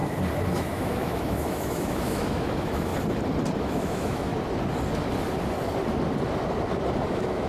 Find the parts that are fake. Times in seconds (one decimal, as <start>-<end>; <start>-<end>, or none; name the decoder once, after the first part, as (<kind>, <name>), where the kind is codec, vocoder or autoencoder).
0.6-2.9 (autoencoder, DAC-VAE); 3.6-4.3; 7.1-7.5